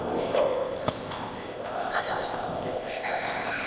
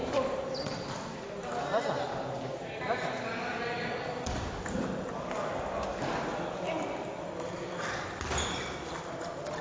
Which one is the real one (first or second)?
second